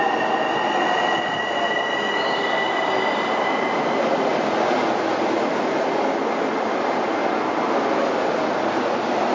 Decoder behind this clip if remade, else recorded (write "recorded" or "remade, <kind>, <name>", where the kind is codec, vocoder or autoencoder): recorded